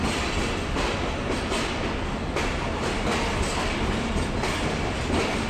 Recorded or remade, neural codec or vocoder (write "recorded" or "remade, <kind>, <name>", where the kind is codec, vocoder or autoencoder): recorded